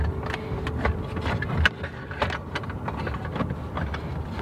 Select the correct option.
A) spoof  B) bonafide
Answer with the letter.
B